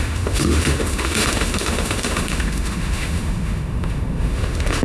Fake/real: fake